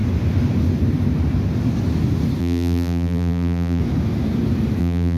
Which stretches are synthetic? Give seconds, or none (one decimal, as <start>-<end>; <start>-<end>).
2.4-3.8; 4.8-5.2